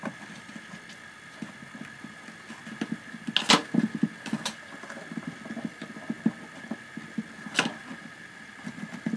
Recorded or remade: recorded